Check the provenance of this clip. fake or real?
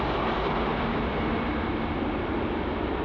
real